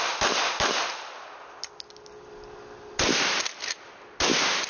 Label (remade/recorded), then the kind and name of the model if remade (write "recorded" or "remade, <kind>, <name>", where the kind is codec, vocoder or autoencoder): recorded